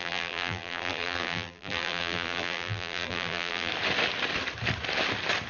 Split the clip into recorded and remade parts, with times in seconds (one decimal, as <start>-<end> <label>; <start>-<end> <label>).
0.0-3.7 remade; 3.7-5.5 recorded